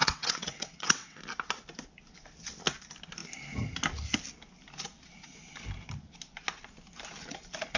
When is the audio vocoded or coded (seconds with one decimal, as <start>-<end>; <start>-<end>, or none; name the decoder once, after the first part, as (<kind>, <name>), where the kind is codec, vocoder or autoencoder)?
0.0-1.2 (vocoder, WaveNeXt)